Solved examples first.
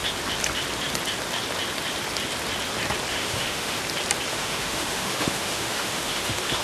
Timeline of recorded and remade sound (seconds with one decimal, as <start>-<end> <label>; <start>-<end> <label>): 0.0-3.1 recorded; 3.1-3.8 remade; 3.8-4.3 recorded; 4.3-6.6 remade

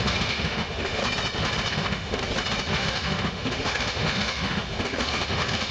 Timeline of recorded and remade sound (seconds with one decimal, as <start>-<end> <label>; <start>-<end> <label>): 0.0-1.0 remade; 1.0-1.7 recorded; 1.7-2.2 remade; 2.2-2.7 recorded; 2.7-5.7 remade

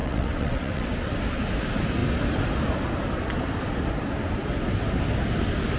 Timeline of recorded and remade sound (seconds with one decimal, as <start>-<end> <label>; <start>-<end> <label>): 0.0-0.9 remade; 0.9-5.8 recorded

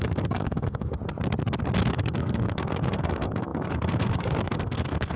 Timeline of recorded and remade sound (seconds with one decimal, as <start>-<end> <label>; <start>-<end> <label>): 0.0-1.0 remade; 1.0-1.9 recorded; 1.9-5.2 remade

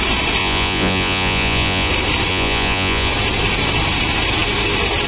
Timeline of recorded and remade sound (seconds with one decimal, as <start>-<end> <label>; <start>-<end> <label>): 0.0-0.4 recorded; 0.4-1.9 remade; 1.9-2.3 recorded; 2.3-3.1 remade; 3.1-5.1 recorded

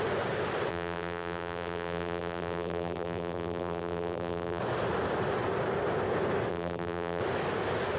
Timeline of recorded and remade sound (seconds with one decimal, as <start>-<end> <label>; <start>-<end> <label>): 0.0-0.7 recorded; 0.7-4.6 remade; 4.6-6.5 recorded; 6.5-7.2 remade; 7.2-8.0 recorded

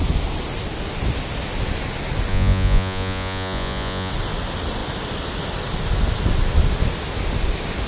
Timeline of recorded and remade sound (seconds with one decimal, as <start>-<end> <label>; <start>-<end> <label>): 0.0-2.3 recorded; 2.3-4.1 remade; 4.1-7.9 recorded